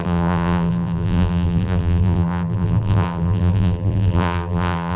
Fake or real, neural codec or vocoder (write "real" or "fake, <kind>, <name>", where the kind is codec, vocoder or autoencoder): fake, vocoder, BigVGAN v2